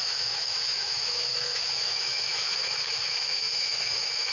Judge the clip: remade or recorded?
remade